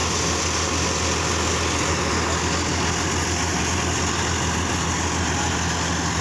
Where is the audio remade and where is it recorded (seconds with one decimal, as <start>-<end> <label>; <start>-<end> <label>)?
0.0-6.2 recorded